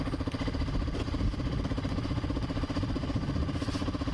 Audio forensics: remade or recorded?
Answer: recorded